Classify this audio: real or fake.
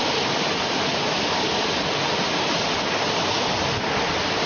real